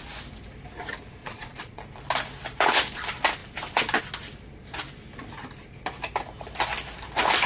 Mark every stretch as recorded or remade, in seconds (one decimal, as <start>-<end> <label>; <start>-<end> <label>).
0.0-1.2 recorded; 1.2-1.8 remade; 1.8-7.5 recorded